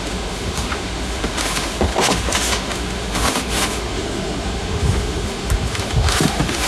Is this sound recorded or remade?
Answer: remade